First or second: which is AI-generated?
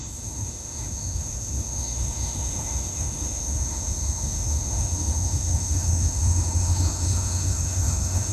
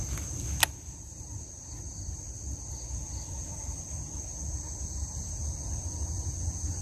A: first